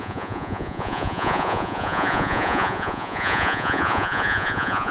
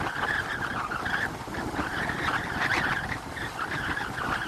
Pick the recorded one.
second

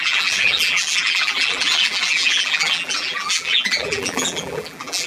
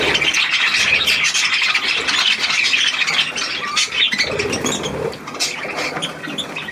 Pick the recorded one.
second